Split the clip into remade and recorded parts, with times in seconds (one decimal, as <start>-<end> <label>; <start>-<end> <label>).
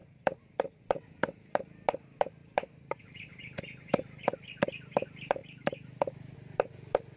0.0-0.8 remade; 0.8-2.4 recorded; 2.4-3.0 remade; 3.0-7.2 recorded